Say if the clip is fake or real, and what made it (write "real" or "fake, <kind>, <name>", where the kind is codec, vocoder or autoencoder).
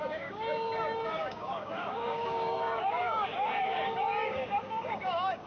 fake, codec, DAC